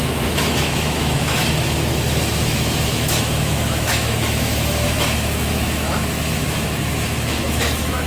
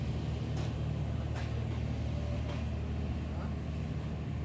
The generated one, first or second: first